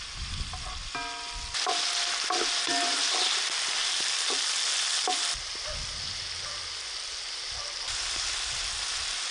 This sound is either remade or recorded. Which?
recorded